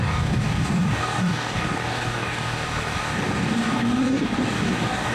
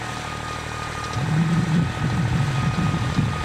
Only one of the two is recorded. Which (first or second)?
second